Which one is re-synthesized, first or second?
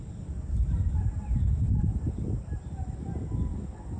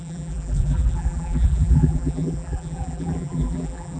second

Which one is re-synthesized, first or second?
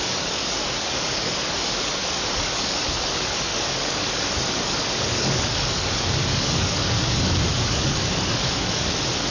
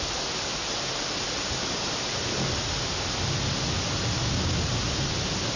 first